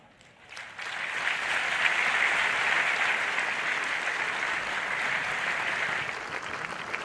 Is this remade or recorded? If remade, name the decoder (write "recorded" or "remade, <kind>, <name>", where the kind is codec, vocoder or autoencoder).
recorded